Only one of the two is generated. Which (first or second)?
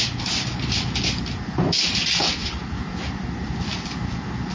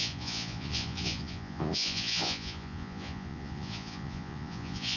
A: second